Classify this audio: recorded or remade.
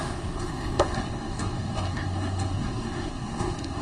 remade